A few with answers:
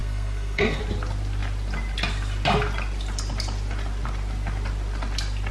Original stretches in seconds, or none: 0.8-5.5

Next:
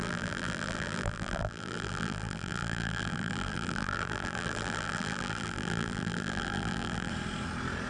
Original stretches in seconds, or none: 7.1-7.9

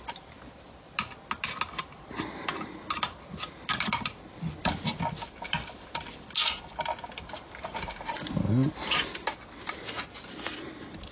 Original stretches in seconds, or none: 0.0-11.1

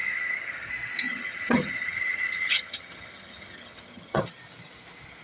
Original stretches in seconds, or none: 0.7-1.1; 4.2-5.2

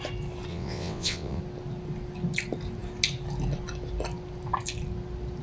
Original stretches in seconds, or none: 0.0-0.5; 1.4-5.4

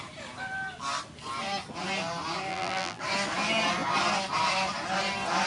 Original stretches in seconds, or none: 0.0-2.5; 3.0-5.5

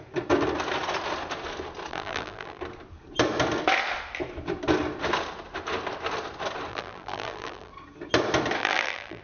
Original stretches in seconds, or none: 0.0-1.9; 2.6-6.7; 7.7-8.6

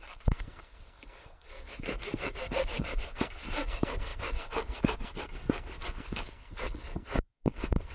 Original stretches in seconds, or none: none